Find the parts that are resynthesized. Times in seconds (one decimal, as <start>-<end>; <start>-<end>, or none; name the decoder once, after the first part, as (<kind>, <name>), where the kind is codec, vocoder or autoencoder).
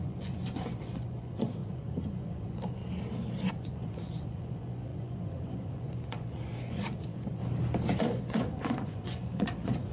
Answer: 0.0-2.8 (vocoder, Vocos); 3.5-7.4; 8.0-9.9